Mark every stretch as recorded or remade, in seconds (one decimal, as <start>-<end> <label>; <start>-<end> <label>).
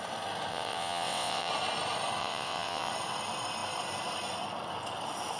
0.0-0.5 recorded; 0.5-1.5 remade; 1.5-2.2 recorded; 2.2-2.9 remade; 2.9-5.4 recorded